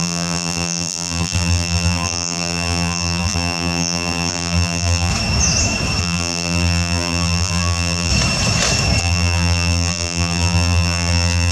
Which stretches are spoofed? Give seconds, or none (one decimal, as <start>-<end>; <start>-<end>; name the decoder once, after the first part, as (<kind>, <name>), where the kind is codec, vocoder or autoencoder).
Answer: 0.0-5.1 (vocoder, BigVGAN v2); 6.0-8.1; 9.0-11.5